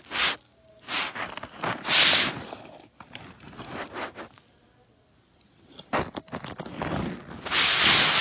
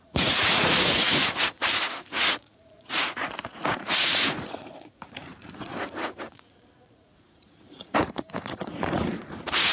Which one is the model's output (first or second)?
second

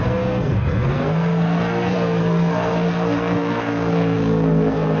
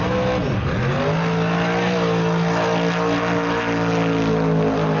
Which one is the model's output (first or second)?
first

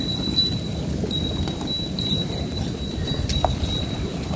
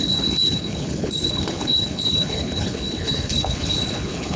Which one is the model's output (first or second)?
second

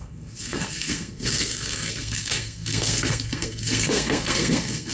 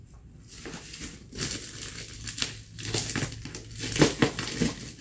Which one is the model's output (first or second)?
first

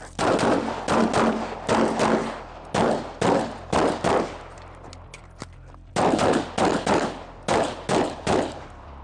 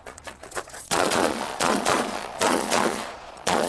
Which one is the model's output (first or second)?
second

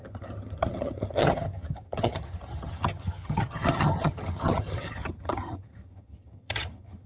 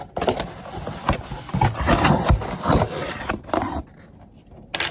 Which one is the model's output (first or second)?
first